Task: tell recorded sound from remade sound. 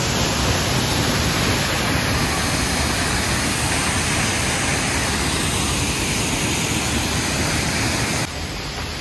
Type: recorded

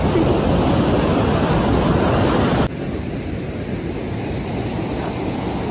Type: recorded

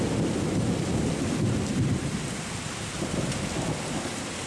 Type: recorded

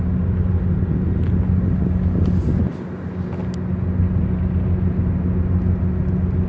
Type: recorded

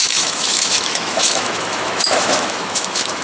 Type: remade